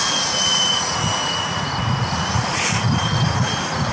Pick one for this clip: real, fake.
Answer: fake